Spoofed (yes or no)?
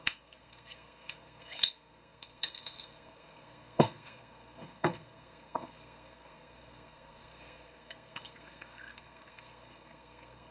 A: yes